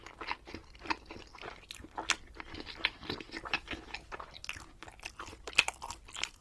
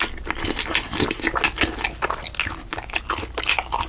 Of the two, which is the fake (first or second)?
first